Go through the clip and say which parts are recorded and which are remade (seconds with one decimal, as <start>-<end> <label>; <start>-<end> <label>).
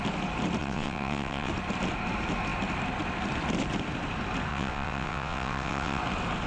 0.0-0.6 recorded; 0.6-1.5 remade; 1.5-4.5 recorded; 4.5-6.0 remade; 6.0-6.5 recorded